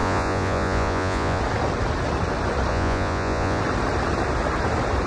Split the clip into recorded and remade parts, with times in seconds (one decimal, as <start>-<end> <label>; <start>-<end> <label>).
0.0-1.4 remade; 1.4-2.7 recorded; 2.7-3.6 remade; 3.6-5.1 recorded